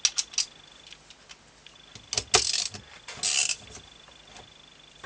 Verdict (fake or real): real